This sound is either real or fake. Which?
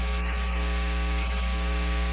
fake